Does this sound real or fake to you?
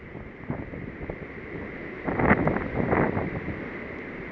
real